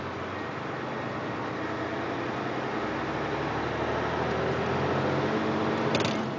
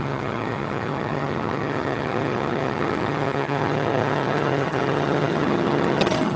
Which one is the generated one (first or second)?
second